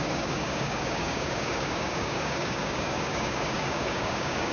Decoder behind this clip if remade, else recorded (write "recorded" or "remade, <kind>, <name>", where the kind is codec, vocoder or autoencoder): remade, codec, DAC